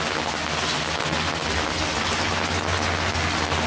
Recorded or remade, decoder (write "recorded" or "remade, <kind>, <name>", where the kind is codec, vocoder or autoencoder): recorded